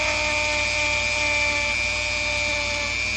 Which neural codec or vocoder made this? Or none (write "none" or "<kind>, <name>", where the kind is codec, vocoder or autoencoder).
none